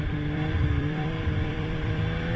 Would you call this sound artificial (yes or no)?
yes